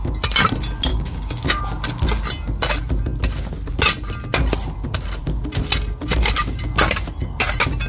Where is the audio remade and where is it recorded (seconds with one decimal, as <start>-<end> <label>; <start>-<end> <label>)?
0.0-0.9 recorded; 0.9-1.6 remade; 1.6-7.9 recorded